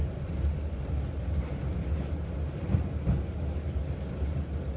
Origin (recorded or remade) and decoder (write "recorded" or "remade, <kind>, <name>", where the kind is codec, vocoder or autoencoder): recorded